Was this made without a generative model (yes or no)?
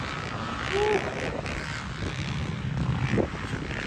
yes